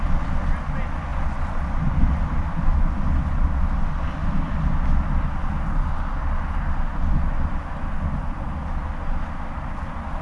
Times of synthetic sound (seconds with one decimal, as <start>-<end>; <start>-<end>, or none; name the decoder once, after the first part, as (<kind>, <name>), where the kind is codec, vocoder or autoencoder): none